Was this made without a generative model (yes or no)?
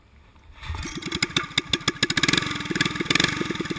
yes